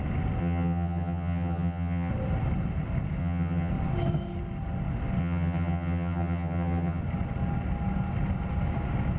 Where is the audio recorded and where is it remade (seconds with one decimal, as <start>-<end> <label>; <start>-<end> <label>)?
0.0-0.4 recorded; 0.4-2.1 remade; 2.1-3.2 recorded; 3.2-3.7 remade; 3.7-5.2 recorded; 5.2-7.0 remade; 7.0-9.2 recorded